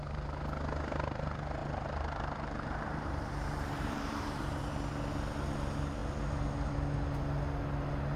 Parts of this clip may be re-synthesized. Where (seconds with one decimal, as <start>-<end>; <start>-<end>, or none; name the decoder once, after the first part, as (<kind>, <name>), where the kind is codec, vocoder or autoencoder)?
1.6-4.7 (vocoder, BigVGAN v2)